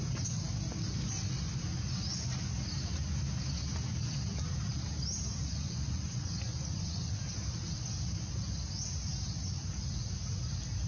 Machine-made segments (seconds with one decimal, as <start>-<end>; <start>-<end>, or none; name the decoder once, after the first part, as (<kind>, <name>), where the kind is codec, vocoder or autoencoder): 5.4-7.1 (vocoder, Vocos)